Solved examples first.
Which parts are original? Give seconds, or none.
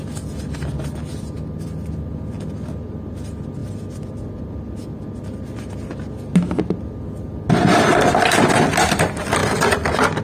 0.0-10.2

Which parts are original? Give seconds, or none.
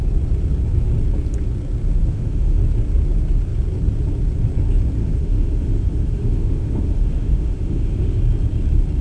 0.0-2.0; 2.6-5.0; 8.2-9.0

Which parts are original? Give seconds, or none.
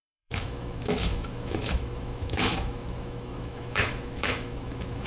none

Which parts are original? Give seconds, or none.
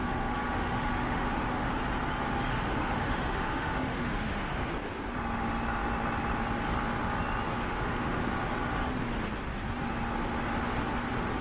1.8-2.5; 4.7-7.5; 8.2-11.4